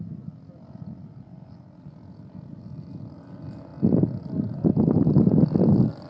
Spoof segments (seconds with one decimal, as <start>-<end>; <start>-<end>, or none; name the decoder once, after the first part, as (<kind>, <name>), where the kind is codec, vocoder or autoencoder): none